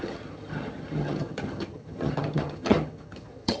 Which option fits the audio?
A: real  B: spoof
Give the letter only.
B